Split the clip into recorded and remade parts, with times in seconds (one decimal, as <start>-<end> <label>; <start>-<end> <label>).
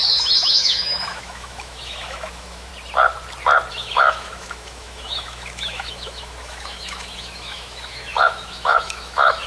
0.0-2.7 remade; 2.7-3.7 recorded; 3.7-9.5 remade